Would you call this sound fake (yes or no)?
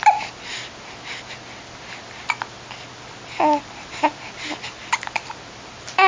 no